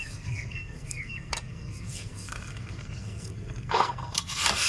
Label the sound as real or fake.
fake